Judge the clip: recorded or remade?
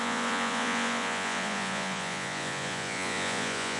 remade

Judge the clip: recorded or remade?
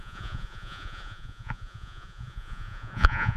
remade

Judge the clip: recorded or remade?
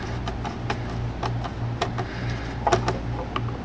recorded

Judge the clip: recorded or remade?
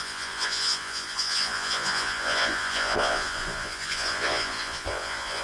remade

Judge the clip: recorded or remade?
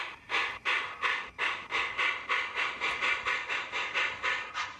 recorded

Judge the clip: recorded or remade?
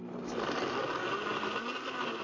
recorded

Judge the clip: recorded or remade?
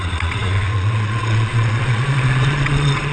remade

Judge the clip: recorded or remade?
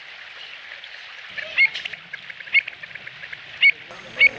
recorded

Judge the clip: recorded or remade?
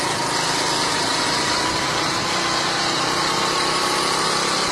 recorded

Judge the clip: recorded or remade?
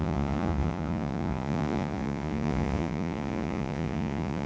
remade